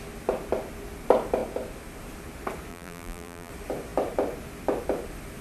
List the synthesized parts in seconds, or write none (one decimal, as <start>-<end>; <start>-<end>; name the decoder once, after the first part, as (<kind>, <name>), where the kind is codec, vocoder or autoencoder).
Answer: 2.7-3.5 (vocoder, BigVGAN v2)